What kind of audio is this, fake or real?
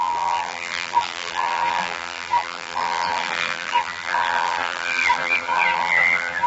fake